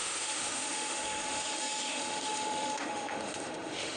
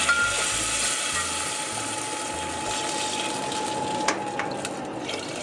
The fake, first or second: first